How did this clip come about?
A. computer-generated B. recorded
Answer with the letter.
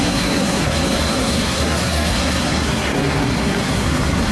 A